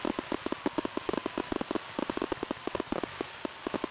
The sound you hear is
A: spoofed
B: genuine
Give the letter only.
B